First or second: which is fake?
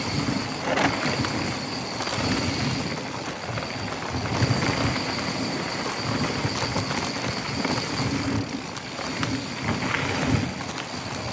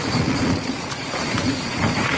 second